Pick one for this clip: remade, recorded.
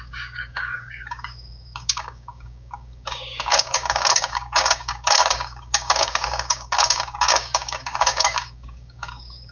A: remade